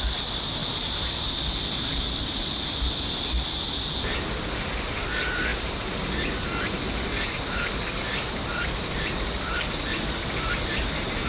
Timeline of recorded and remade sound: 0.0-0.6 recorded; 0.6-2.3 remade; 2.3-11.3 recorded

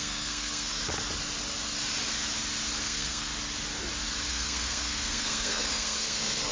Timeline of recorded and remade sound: 0.0-0.8 remade; 0.8-2.8 recorded; 2.8-3.3 remade; 3.3-4.3 recorded; 4.3-6.5 remade